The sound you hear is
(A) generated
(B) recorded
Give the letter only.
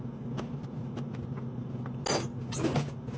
B